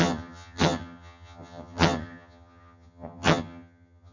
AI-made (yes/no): yes